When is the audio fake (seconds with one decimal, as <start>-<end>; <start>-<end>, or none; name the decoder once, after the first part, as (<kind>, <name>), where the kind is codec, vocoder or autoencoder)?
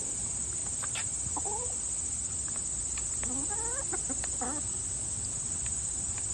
none